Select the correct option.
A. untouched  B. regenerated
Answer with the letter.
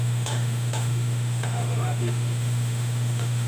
B